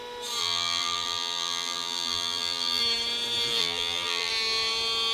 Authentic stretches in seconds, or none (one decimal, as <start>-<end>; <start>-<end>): 0.0-0.4; 2.8-3.6; 4.3-5.1